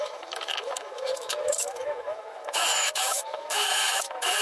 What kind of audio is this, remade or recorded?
remade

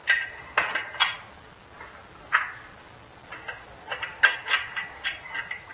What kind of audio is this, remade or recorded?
recorded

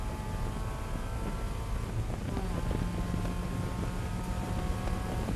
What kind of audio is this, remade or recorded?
recorded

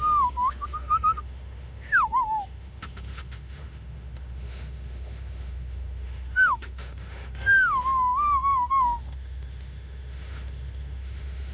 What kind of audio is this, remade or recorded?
remade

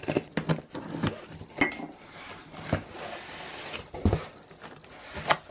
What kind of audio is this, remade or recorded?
recorded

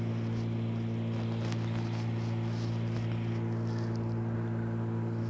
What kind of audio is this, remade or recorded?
recorded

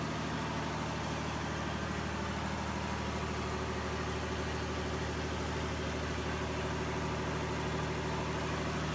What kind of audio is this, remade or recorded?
recorded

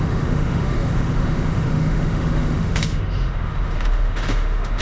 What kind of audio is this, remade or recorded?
remade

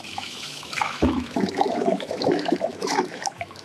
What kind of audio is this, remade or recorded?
remade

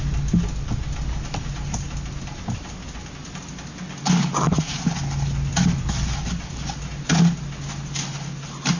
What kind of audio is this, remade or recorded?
recorded